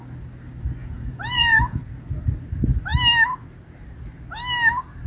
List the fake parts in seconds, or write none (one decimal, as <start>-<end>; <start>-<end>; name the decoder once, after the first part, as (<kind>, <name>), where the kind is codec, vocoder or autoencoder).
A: 0.8-1.8 (vocoder, Vocos)